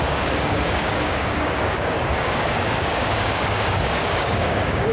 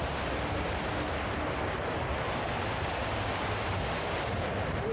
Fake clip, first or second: first